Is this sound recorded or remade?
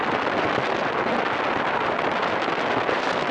recorded